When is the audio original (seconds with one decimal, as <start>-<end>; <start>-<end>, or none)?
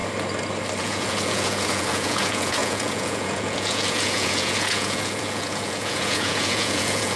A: 0.0-0.8